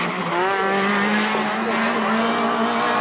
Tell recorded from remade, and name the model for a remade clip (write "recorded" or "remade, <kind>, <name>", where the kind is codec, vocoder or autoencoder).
recorded